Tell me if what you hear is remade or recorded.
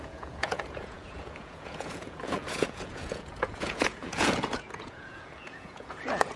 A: remade